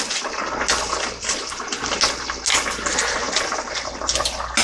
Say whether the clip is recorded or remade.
recorded